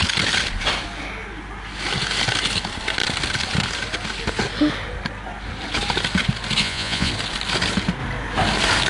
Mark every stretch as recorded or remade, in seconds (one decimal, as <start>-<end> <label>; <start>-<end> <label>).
0.0-6.6 recorded; 6.6-7.1 remade; 7.1-8.9 recorded